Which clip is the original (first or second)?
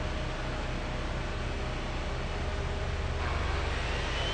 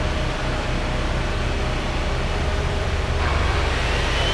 first